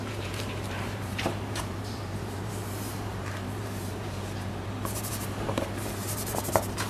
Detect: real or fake fake